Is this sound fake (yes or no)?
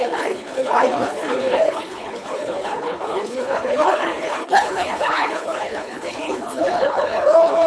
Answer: yes